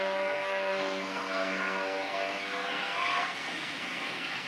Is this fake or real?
fake